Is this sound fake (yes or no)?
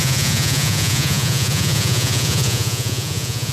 yes